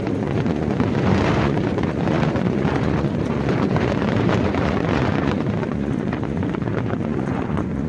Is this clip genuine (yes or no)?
no